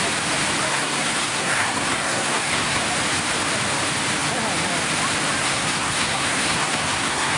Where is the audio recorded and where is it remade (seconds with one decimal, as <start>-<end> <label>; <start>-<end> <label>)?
0.0-0.7 recorded; 0.7-2.8 remade; 2.8-5.4 recorded; 5.4-7.4 remade